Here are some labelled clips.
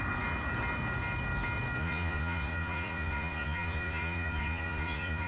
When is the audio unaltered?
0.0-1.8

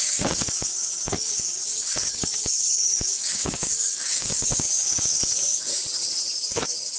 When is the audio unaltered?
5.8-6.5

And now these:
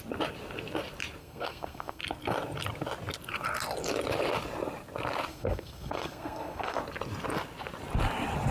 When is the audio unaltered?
0.0-1.2; 2.0-5.3; 6.8-8.5

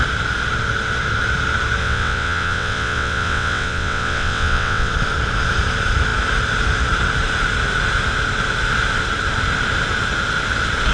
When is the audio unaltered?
0.0-1.8; 4.9-10.9

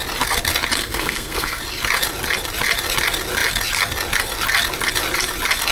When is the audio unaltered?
0.0-0.8; 1.6-5.7

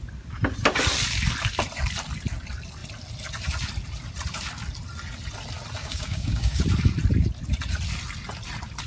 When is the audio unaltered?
0.0-5.8; 6.6-8.9

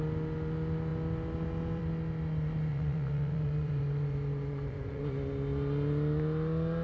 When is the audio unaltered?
0.0-2.7; 5.0-6.8

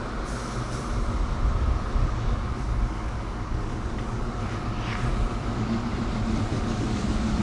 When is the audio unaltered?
0.0-2.0; 4.4-5.1; 5.9-6.5